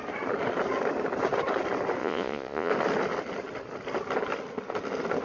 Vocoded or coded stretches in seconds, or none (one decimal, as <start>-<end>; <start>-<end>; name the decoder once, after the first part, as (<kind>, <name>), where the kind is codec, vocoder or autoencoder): 2.0-2.7 (vocoder, Vocos)